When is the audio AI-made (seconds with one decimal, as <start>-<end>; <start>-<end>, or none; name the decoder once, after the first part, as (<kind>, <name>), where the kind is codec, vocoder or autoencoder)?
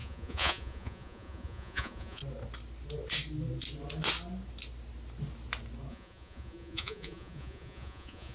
0.0-2.2 (vocoder, Vocos); 5.9-8.3